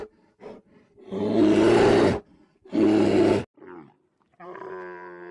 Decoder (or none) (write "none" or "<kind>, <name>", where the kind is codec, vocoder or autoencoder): none